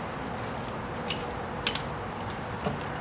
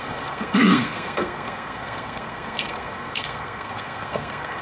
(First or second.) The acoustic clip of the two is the first